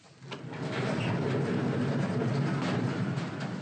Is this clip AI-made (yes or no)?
no